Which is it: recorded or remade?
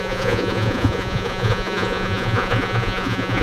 remade